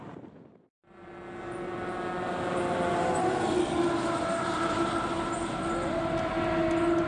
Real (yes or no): yes